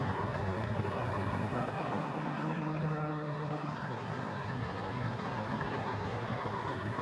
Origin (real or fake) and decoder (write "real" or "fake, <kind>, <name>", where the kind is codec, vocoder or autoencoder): fake, codec, SNAC